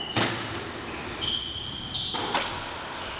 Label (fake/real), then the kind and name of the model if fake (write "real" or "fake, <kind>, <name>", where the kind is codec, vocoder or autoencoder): real